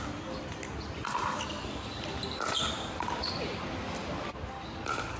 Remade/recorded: recorded